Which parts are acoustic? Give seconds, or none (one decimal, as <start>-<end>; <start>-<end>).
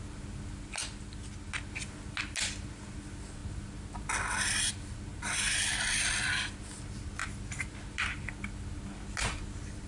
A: 0.0-7.2; 7.7-9.9